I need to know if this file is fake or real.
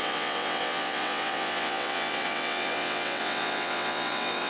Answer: fake